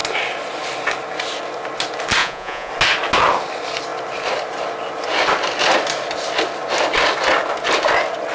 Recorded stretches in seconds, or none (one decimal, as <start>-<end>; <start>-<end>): 0.0-2.2; 2.7-8.3